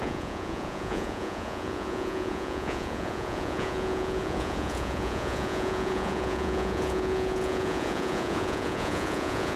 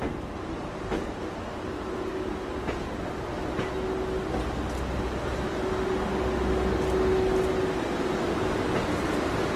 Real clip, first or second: second